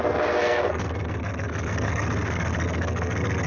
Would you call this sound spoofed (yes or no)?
yes